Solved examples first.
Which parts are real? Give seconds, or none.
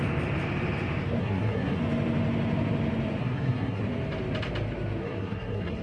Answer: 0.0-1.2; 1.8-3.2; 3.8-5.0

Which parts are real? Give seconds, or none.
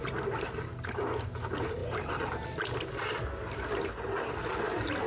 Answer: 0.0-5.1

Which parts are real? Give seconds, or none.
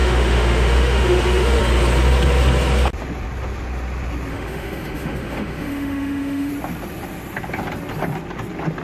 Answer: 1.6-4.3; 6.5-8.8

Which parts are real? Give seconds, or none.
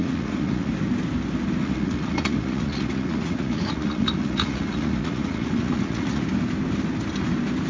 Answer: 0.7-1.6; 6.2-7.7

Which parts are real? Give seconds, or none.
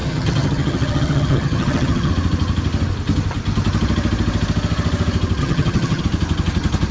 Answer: 2.1-5.4; 6.0-6.9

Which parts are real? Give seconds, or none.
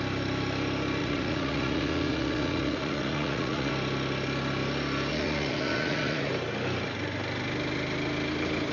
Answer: 0.0-1.0; 3.7-5.1; 6.3-8.7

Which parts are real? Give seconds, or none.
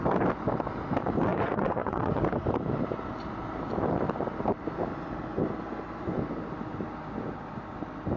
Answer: 0.0-1.3; 2.2-8.2